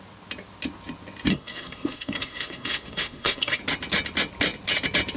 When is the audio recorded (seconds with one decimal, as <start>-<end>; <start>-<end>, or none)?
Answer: 0.0-1.3; 3.6-5.2